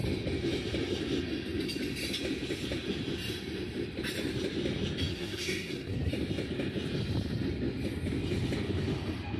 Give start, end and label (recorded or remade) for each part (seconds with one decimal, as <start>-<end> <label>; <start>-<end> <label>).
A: 0.0-5.1 recorded; 5.1-6.1 remade; 6.1-9.4 recorded